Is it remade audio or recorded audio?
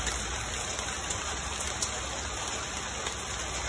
recorded